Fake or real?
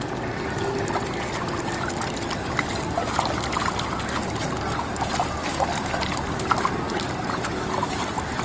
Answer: real